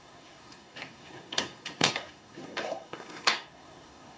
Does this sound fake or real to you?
fake